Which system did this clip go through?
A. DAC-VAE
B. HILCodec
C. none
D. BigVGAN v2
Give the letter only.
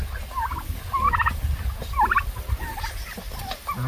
C